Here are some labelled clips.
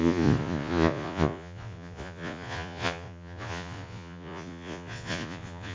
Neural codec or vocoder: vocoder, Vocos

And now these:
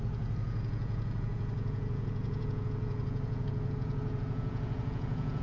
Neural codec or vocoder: vocoder, Vocos